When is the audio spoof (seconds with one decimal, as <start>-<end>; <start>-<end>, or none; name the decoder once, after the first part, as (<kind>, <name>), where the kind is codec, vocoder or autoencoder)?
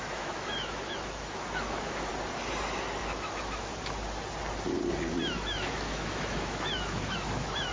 0.0-2.1 (autoencoder, DAC-VAE); 3.0-3.7; 5.3-7.7